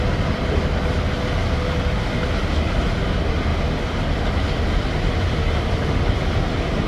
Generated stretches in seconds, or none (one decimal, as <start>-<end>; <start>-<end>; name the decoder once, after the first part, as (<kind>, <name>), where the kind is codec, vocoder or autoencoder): none